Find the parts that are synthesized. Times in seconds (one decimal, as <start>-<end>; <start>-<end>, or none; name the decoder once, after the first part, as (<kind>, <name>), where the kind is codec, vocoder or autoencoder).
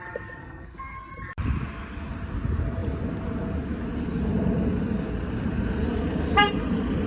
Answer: 0.4-1.1 (codec, SNAC)